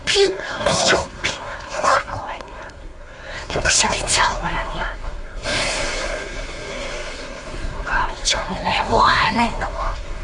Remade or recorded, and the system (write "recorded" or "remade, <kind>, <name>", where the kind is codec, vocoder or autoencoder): remade, codec, SNAC